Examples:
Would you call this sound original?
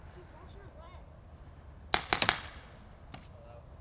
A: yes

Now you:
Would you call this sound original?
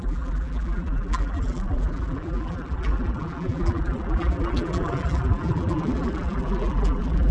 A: no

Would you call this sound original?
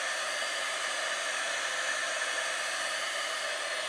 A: yes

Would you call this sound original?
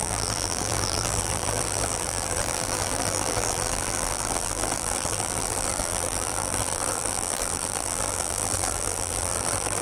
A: no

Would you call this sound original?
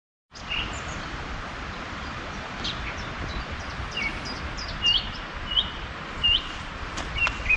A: no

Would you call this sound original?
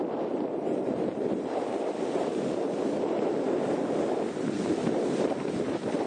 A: no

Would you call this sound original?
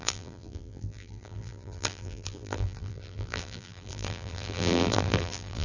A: no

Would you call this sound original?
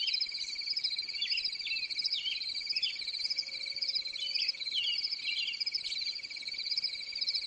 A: no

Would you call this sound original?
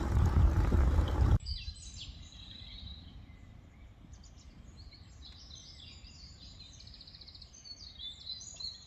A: no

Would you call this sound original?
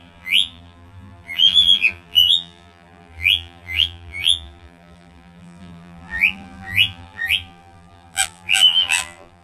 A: no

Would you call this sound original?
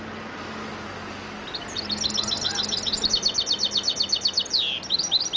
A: yes